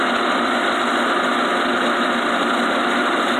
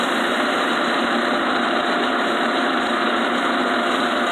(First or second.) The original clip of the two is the first